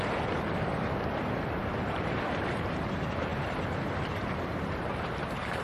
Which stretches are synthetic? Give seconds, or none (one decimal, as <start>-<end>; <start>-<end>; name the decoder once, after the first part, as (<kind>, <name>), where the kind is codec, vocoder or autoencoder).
0.0-5.6 (vocoder, BigVGAN v2)